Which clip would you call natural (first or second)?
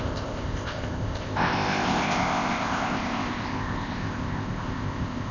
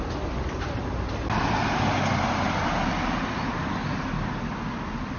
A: second